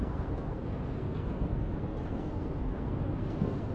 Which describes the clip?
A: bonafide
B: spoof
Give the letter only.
B